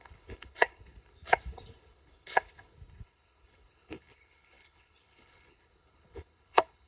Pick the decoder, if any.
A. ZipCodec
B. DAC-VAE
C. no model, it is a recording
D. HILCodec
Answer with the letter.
D